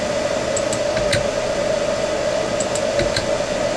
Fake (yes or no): no